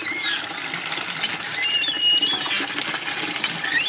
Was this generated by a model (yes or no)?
yes